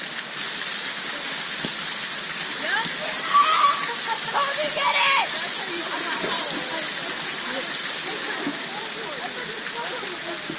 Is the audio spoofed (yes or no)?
no